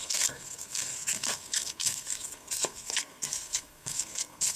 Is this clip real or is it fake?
fake